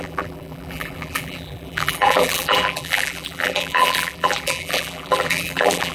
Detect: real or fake fake